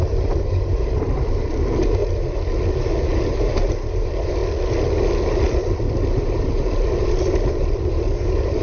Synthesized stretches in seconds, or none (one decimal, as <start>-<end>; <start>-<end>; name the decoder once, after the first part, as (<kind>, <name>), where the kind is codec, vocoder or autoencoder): 0.0-2.0 (vocoder, BigVGAN v2); 3.0-4.4; 6.1-8.6